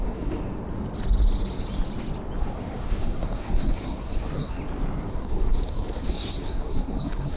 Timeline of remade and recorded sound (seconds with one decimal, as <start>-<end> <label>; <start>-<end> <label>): 0.0-0.4 remade; 0.4-2.4 recorded; 2.4-4.6 remade; 4.6-5.1 recorded; 5.1-7.4 remade